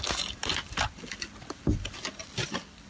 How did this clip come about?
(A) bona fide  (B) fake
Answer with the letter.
B